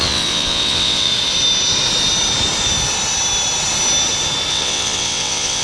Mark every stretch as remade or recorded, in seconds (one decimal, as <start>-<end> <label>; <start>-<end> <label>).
0.0-1.1 remade; 1.1-4.5 recorded; 4.5-5.6 remade